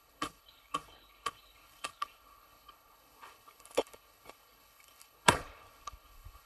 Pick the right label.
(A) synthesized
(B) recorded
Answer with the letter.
A